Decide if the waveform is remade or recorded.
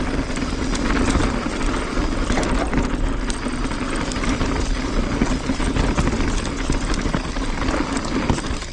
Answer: recorded